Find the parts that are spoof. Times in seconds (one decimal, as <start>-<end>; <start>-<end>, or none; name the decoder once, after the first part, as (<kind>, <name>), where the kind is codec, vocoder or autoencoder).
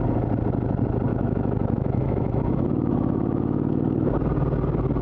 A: 1.1-4.1 (autoencoder, DAC-VAE)